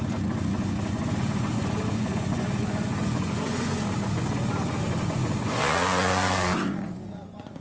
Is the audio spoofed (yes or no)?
yes